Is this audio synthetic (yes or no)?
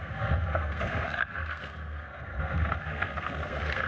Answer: yes